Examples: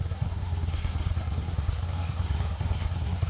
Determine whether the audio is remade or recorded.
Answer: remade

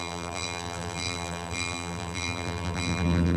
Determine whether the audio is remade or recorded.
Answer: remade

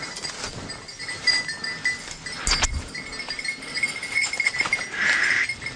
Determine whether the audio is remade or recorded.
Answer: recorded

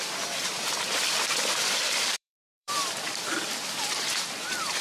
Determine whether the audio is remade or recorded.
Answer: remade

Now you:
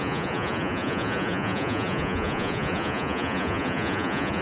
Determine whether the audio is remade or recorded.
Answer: remade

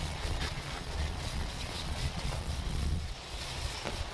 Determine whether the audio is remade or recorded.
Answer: remade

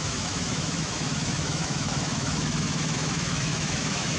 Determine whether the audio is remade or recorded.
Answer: remade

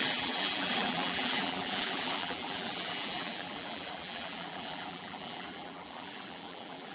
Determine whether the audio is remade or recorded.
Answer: remade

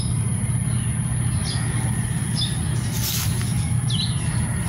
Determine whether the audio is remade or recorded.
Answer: recorded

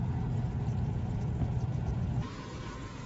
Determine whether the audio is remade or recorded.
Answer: remade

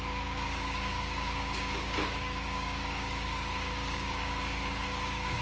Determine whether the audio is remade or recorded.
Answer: remade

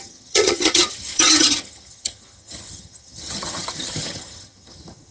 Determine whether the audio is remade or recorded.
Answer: remade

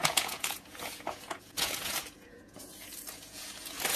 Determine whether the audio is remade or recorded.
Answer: remade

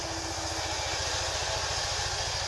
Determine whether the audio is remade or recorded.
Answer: recorded